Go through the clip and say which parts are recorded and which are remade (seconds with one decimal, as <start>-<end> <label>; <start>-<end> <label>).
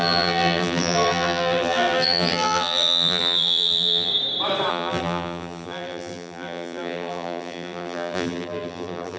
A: 0.0-4.1 remade; 4.1-4.7 recorded; 4.7-9.2 remade